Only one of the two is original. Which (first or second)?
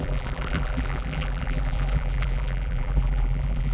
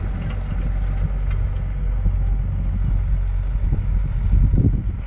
second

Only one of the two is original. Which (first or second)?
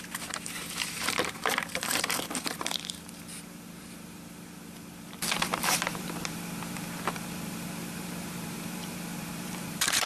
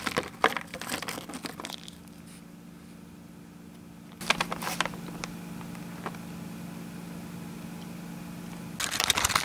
second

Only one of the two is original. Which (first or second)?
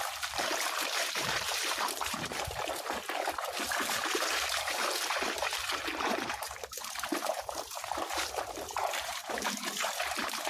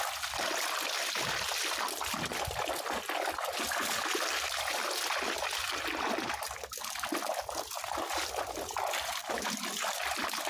second